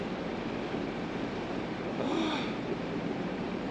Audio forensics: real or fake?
fake